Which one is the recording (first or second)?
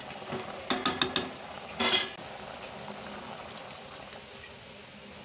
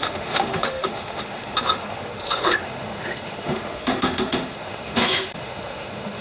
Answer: first